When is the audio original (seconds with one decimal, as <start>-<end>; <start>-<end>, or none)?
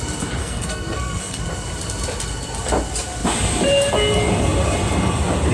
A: 0.0-0.4; 1.4-5.5